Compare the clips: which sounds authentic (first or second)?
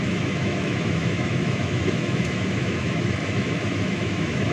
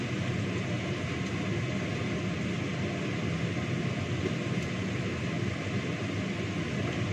second